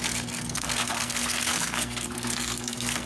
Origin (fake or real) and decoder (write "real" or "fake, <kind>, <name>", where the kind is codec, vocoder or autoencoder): fake, codec, SNAC